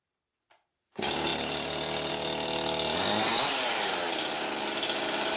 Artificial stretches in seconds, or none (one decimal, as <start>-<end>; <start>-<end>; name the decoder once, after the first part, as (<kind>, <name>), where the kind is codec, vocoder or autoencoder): 3.3-3.9 (vocoder, BigVGAN v2)

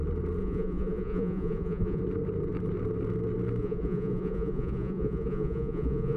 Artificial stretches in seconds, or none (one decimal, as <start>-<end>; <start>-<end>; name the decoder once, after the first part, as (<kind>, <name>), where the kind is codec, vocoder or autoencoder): 0.4-2.0 (vocoder, Vocos); 3.6-6.2